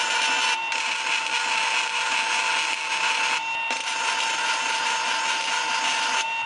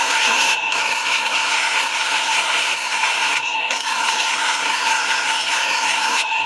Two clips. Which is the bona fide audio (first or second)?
first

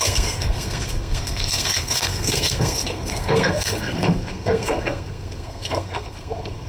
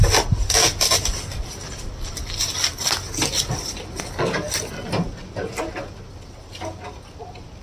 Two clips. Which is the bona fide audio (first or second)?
second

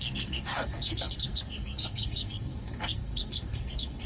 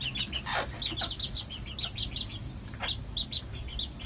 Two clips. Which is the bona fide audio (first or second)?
second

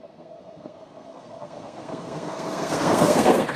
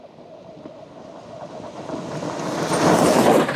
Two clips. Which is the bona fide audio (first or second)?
second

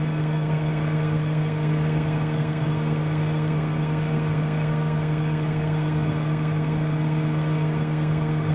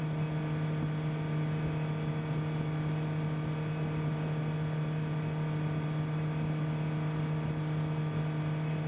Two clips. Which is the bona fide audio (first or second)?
second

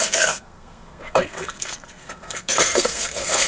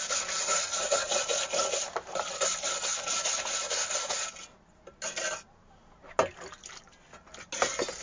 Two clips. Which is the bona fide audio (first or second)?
second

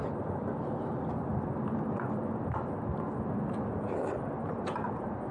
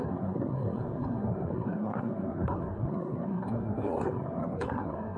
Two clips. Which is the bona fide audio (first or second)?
first